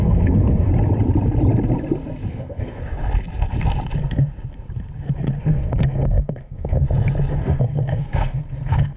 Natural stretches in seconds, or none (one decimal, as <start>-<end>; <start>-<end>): 0.7-2.3; 2.8-5.4; 6.8-7.4

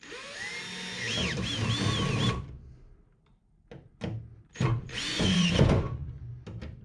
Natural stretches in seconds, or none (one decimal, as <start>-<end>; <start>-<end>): 0.0-4.8; 6.3-6.8

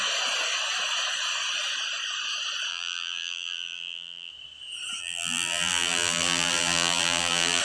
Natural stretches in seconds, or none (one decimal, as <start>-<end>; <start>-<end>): 0.0-2.7; 4.3-5.0

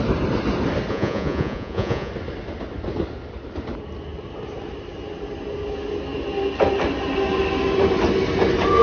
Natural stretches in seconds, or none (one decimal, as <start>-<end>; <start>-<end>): 0.0-0.9; 2.1-8.8